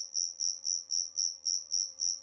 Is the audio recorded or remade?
remade